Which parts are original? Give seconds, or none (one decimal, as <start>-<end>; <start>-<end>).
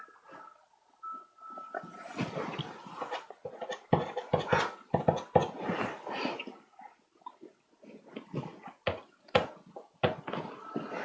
0.0-11.0